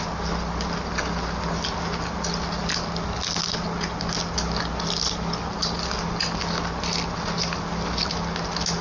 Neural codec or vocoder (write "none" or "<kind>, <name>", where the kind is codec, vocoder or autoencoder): none